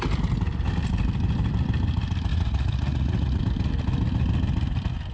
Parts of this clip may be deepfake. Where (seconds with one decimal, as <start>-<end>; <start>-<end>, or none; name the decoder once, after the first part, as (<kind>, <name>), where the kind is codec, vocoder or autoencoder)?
2.3-3.4 (vocoder, Vocos)